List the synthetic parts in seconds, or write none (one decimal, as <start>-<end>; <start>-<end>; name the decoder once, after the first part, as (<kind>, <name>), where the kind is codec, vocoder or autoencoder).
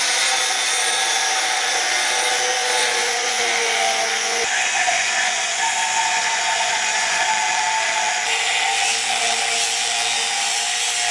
2.6-7.2 (vocoder, Vocos)